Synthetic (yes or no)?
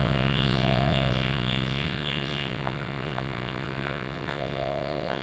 yes